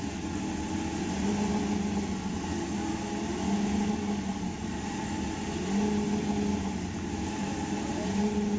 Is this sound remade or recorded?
recorded